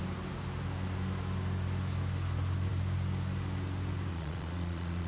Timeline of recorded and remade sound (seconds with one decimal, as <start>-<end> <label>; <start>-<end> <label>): 0.0-4.1 recorded; 4.1-5.1 remade